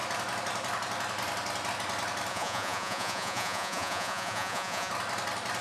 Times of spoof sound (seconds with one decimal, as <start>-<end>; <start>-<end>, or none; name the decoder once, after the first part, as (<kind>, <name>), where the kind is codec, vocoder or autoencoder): 2.3-4.9 (vocoder, Vocos)